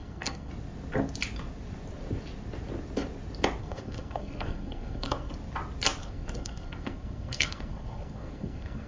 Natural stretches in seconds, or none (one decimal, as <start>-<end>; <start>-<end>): 0.5-3.6; 5.3-6.0